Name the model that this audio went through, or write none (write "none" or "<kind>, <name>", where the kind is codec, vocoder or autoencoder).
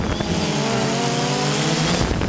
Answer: none